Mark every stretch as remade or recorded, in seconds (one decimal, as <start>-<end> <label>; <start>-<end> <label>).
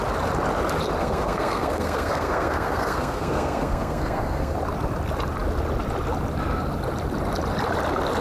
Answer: 0.0-1.0 recorded; 1.0-4.6 remade; 4.6-8.2 recorded